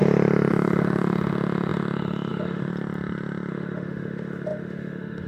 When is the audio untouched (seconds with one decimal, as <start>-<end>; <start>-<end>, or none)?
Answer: 0.0-0.5; 2.7-3.5